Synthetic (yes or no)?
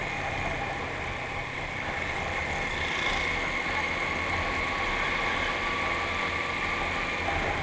no